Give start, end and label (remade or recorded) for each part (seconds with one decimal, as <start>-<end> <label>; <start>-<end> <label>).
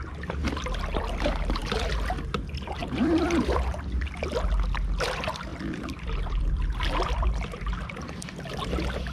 0.0-2.8 recorded; 2.8-3.7 remade; 3.7-5.5 recorded; 5.5-8.4 remade; 8.4-9.1 recorded